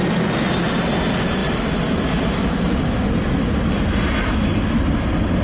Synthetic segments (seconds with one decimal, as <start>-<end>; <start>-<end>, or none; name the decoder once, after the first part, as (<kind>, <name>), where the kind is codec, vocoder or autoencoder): none

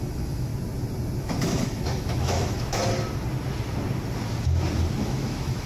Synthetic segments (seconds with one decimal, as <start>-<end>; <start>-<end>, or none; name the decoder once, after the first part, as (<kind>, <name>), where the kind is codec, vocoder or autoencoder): 0.0-0.5 (autoencoder, DAC-VAE); 1.2-2.8; 5.0-5.7

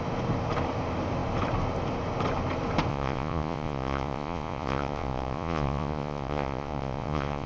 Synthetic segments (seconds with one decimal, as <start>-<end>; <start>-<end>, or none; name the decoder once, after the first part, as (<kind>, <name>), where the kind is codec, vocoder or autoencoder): 2.9-7.5 (vocoder, Vocos)

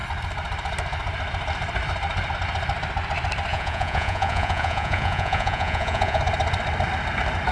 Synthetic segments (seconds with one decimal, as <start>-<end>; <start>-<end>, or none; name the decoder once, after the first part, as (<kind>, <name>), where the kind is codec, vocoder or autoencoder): 3.5-6.2 (vocoder, Vocos)

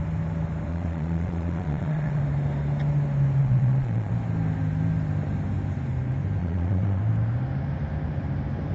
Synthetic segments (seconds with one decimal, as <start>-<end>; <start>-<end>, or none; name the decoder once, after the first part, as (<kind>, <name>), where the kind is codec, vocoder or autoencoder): 0.7-2.2 (vocoder, Vocos); 3.4-4.1; 6.4-7.0

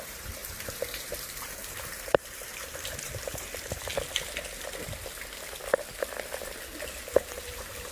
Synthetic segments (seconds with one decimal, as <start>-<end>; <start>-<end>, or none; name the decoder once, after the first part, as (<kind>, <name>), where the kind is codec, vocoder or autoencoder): 0.0-3.9 (vocoder, BigVGAN v2); 7.4-7.9

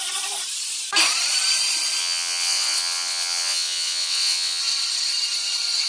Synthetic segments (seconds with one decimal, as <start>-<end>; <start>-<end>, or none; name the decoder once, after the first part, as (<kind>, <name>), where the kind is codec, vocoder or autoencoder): 2.0-4.6 (vocoder, WaveNeXt)

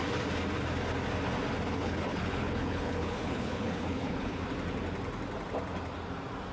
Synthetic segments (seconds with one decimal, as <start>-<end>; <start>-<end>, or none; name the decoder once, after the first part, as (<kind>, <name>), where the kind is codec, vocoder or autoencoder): 1.8-4.4 (codec, HILCodec)